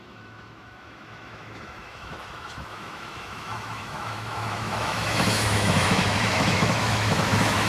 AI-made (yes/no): yes